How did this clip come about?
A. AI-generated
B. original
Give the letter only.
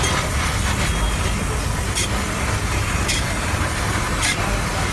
B